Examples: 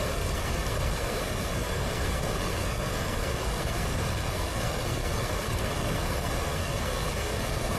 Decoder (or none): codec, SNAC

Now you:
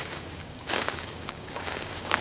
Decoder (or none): codec, DAC